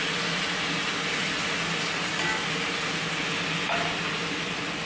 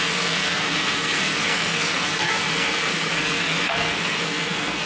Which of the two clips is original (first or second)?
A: first